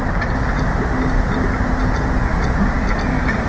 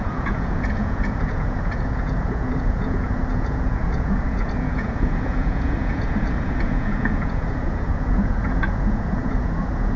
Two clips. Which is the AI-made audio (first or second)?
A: second